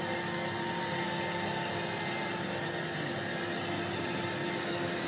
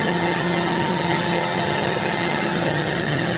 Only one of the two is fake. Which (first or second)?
second